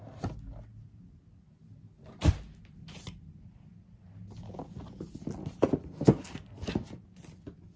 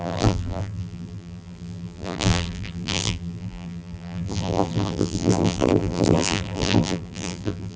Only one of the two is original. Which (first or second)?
first